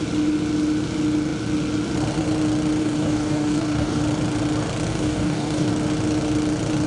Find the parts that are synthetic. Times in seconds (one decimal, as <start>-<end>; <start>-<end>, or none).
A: 2.8-4.0; 4.9-5.7